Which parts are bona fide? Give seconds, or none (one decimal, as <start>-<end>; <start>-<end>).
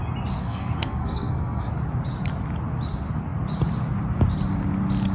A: 0.0-0.4; 1.7-5.1